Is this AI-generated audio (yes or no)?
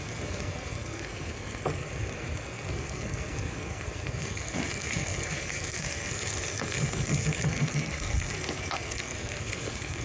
yes